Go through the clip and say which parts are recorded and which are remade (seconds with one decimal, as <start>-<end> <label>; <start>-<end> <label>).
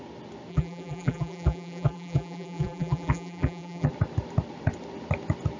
0.0-0.5 recorded; 0.5-3.9 remade; 3.9-5.6 recorded